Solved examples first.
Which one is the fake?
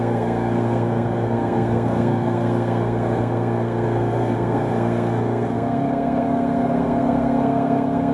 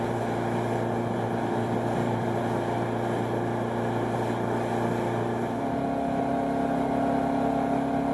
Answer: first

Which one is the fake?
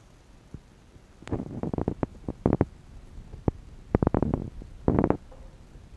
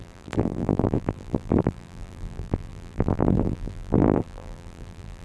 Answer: second